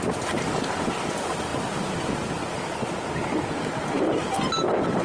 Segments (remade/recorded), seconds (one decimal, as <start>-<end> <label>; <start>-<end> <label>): 0.0-5.0 recorded